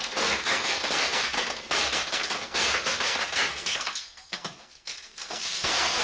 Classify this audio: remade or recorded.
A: remade